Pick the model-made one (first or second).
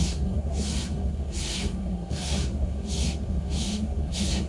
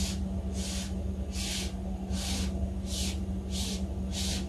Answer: first